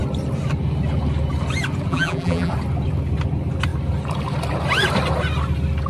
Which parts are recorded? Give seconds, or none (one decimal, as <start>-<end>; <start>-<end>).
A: 0.0-1.9; 2.5-5.9